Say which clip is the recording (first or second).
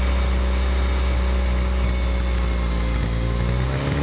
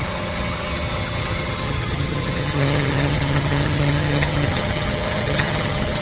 first